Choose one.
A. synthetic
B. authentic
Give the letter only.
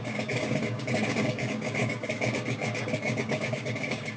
A